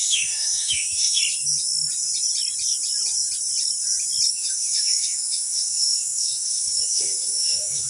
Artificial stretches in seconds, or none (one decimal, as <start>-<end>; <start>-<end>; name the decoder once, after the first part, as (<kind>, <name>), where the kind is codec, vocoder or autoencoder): 0.0-1.2 (autoencoder, DAC-VAE); 4.3-7.9